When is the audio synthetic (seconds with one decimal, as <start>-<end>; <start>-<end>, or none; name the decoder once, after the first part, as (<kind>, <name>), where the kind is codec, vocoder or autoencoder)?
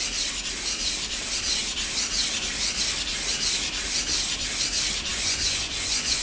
5.1-6.2 (vocoder, Vocos)